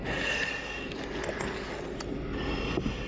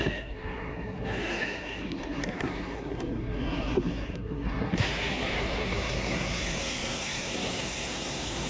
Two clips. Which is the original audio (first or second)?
first